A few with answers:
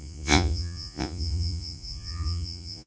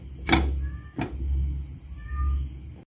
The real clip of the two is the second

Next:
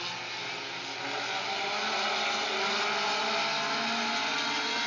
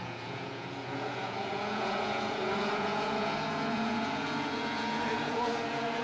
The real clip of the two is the first